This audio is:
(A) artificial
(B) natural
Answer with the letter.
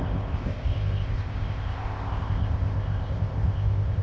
A